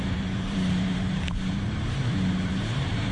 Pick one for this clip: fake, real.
fake